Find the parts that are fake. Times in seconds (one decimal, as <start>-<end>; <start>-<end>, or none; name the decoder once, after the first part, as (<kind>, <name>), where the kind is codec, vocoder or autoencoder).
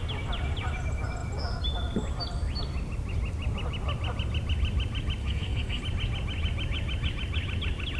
5.2-5.8 (codec, SNAC)